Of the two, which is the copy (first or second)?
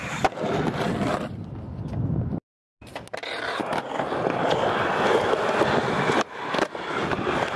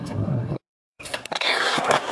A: second